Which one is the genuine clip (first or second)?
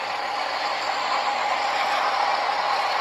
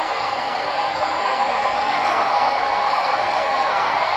first